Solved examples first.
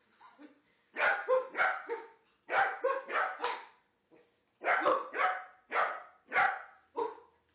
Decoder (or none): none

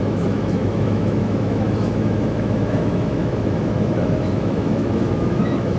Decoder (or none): autoencoder, DAC-VAE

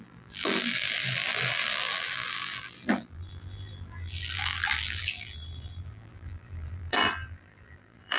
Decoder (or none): vocoder, BigVGAN v2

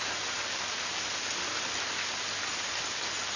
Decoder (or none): none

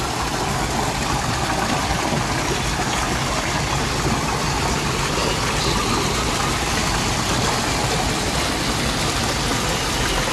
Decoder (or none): none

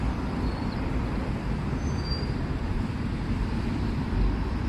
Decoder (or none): vocoder, BigVGAN v2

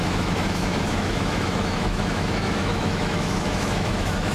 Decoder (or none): autoencoder, DAC-VAE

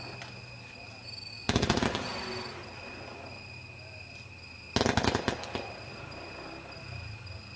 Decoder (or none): none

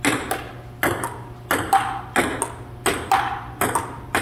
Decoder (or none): none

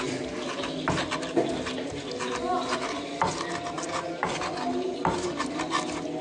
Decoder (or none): none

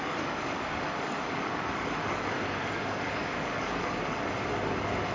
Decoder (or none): codec, DAC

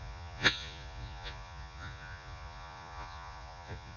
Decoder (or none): vocoder, Vocos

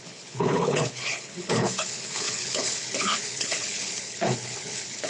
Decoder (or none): codec, HILCodec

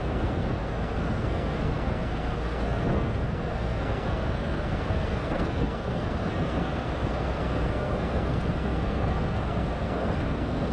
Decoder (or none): codec, SNAC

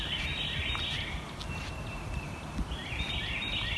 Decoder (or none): none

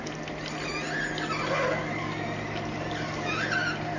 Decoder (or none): none